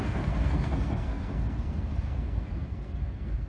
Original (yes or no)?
no